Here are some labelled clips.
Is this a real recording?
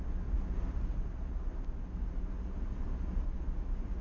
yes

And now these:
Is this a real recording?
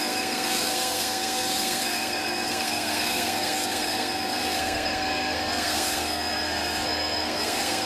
no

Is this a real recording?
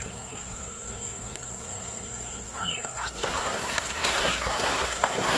no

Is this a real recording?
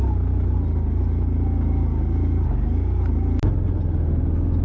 yes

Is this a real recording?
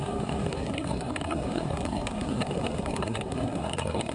no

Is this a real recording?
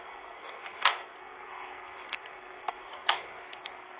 no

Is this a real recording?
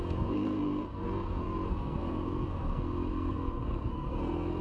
no